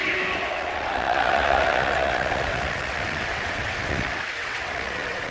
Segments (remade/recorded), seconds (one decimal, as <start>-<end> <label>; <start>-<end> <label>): 0.0-0.5 recorded; 0.5-5.3 remade